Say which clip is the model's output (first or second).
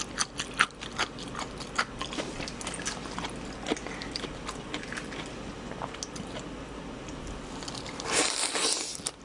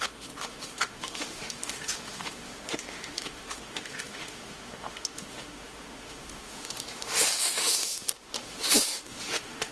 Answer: second